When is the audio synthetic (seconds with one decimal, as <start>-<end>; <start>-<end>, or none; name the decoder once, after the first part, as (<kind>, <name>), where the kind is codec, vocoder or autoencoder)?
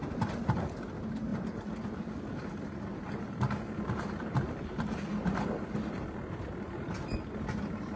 none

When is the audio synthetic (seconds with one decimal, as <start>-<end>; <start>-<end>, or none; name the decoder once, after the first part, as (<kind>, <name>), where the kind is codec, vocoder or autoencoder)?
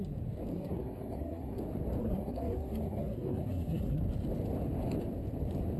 0.5-1.6 (codec, SNAC); 2.0-4.0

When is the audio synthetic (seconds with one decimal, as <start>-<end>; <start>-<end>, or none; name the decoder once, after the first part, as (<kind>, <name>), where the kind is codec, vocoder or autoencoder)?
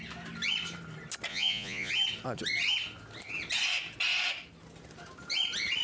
1.3-1.9 (vocoder, Vocos)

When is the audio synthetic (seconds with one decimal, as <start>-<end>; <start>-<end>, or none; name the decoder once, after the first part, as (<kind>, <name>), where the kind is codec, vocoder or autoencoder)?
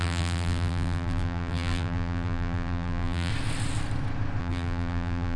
0.0-3.3 (vocoder, BigVGAN v2); 4.4-5.4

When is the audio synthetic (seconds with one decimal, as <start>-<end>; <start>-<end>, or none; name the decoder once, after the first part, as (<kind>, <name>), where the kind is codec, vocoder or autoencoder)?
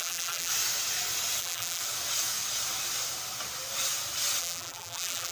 0.0-0.5 (vocoder, BigVGAN v2); 1.4-1.8; 4.4-5.3